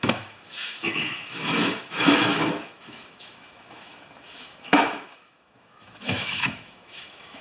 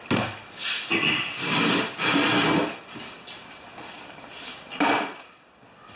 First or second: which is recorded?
second